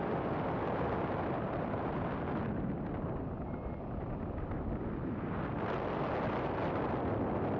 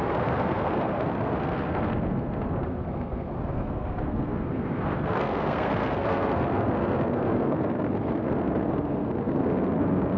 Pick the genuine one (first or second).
first